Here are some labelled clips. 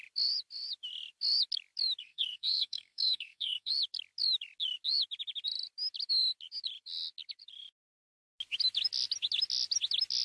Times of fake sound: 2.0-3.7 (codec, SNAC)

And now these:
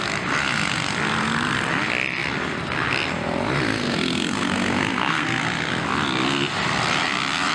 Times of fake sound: 3.8-5.4 (codec, SNAC)

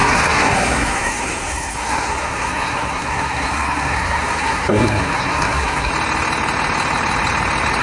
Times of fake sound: 0.0-5.9 (codec, SNAC)